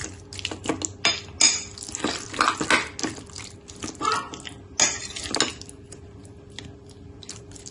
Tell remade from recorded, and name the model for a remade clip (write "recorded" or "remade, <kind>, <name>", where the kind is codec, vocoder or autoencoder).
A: recorded